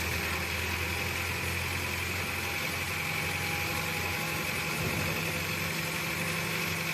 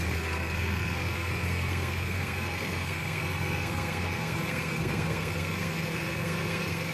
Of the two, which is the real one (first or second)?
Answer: first